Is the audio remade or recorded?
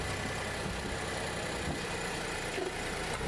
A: recorded